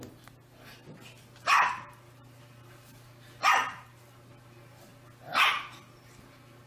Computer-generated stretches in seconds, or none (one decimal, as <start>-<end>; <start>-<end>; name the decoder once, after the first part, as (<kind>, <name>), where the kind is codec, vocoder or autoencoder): none